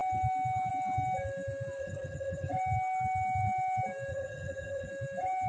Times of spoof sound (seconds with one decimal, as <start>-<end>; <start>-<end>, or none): 1.8-2.5; 4.1-4.9